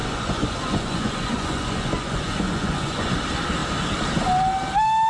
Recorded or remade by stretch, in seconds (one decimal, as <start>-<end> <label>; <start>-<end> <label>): 0.0-3.1 remade; 3.1-5.1 recorded